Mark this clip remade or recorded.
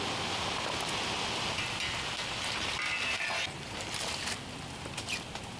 recorded